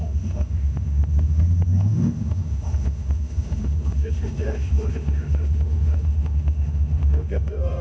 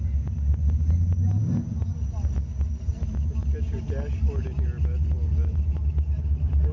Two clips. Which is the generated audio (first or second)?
first